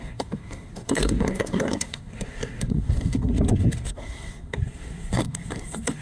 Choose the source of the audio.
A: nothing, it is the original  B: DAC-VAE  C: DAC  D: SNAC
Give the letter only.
D